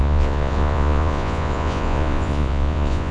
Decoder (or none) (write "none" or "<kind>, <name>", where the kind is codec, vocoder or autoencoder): vocoder, Vocos